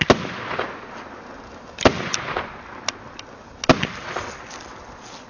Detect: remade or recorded recorded